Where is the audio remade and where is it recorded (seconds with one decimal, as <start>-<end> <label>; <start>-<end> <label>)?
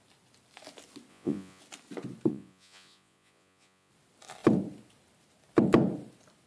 0.0-1.1 recorded; 1.1-1.6 remade; 1.6-2.3 recorded; 2.3-3.9 remade; 3.9-6.5 recorded